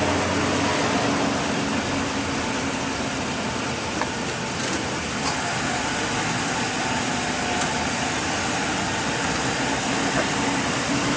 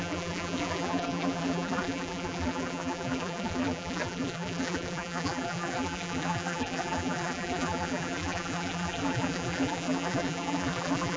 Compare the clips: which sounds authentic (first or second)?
first